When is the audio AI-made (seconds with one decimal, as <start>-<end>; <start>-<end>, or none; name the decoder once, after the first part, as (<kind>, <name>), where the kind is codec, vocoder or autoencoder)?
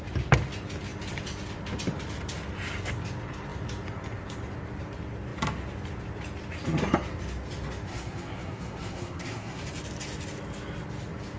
7.9-9.6 (codec, SNAC)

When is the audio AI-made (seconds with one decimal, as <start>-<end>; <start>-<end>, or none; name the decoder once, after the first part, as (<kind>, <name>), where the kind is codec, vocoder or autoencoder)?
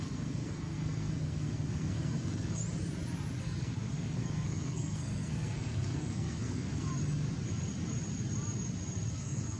0.0-2.6 (codec, SNAC); 3.4-6.9; 9.1-9.6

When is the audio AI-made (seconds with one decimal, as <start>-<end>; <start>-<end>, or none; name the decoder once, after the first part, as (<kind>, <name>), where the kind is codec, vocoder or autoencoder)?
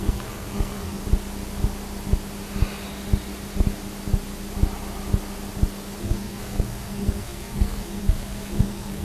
0.0-1.0 (codec, SNAC); 6.0-9.0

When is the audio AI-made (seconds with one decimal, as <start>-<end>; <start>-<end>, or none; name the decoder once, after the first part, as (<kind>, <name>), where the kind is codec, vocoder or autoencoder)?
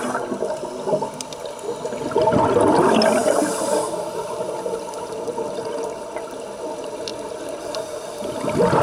none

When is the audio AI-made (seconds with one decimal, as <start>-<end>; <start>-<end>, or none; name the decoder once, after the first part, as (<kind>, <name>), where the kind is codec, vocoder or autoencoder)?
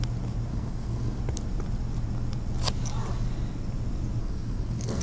0.5-1.2 (codec, SNAC); 4.2-5.0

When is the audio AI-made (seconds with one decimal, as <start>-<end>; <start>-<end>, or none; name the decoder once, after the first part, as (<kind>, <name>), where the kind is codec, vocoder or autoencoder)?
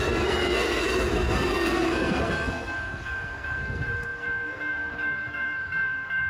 0.0-6.3 (codec, SNAC)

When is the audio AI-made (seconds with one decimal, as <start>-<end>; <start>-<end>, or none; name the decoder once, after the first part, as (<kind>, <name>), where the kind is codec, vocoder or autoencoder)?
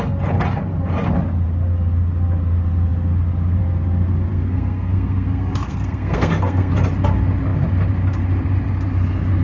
4.3-6.7 (codec, SNAC)